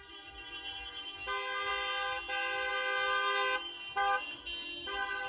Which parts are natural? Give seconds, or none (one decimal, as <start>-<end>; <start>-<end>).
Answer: 0.0-5.3